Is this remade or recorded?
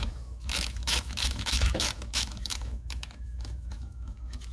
remade